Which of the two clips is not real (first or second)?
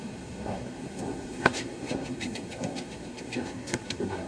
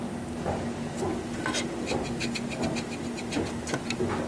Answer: first